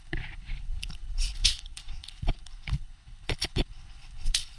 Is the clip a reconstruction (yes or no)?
yes